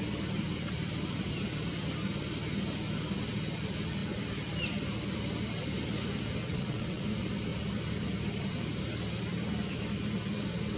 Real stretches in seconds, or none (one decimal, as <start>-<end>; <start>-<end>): 0.0-6.4; 7.0-10.8